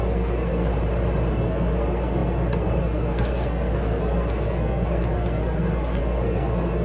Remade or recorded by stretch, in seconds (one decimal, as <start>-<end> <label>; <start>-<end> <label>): 0.0-0.7 remade; 0.7-1.3 recorded; 1.3-6.8 remade